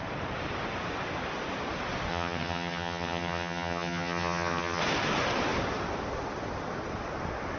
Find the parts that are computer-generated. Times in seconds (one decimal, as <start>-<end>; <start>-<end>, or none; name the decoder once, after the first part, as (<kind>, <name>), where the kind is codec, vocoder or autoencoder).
2.1-4.8 (vocoder, HiFi-GAN)